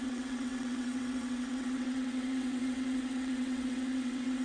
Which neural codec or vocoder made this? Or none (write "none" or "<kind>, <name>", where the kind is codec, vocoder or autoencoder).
vocoder, WaveNeXt